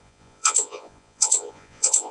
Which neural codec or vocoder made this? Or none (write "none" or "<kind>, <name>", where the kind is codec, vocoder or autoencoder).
vocoder, Vocos